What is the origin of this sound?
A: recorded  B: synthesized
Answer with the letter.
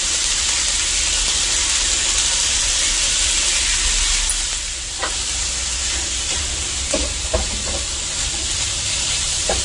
A